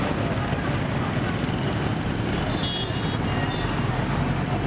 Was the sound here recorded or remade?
recorded